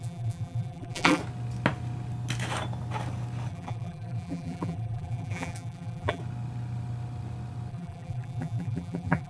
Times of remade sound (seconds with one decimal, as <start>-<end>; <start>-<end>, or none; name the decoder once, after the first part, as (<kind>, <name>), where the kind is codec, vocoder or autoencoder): 0.0-1.2 (vocoder, BigVGAN v2); 3.5-6.2; 7.7-9.3